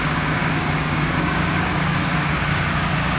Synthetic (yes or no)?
yes